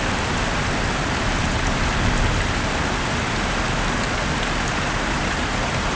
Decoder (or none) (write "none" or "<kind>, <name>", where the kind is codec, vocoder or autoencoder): none